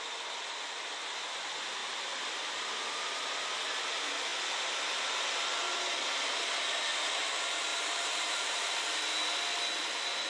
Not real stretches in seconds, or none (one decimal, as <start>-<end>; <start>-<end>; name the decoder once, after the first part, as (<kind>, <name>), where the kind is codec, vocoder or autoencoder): 1.8-3.5 (vocoder, BigVGAN v2); 7.7-8.6

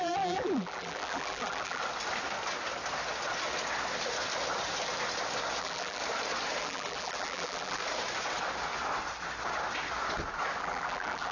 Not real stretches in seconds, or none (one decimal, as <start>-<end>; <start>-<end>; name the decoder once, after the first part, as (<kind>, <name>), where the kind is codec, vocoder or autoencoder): 0.0-1.8 (vocoder, BigVGAN v2); 5.6-6.0; 6.6-7.8; 10.6-11.3

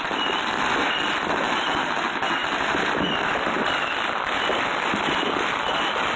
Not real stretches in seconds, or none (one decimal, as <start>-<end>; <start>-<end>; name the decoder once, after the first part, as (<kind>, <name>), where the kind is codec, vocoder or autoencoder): none

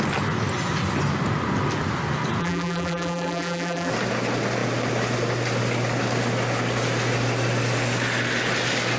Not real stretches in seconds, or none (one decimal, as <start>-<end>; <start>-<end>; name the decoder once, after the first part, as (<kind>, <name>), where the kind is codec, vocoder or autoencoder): 2.4-3.9 (vocoder, BigVGAN v2)

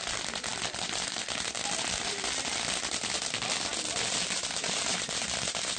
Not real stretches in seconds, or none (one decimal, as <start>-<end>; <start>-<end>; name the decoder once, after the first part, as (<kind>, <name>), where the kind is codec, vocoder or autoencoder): 0.0-5.8 (vocoder, BigVGAN v2)

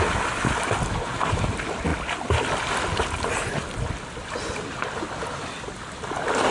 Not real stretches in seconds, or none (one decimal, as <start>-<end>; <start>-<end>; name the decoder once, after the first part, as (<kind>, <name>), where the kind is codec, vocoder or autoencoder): none

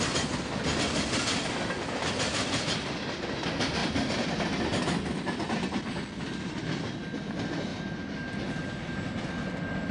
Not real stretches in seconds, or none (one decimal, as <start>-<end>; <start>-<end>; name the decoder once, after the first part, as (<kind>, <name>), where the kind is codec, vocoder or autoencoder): 3.8-4.6 (vocoder, BigVGAN v2); 7.7-8.5

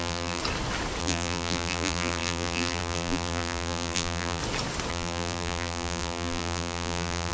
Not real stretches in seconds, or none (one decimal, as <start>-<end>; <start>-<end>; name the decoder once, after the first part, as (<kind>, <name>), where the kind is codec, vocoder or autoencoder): 0.0-0.4 (vocoder, BigVGAN v2); 1.0-4.4; 4.9-7.3